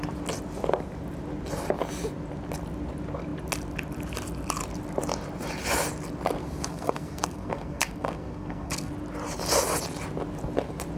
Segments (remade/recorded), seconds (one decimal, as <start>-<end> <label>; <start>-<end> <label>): 0.0-6.4 recorded; 6.4-8.9 remade; 8.9-11.0 recorded